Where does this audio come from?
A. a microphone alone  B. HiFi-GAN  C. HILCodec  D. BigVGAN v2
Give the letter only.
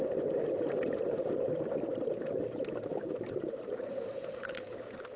A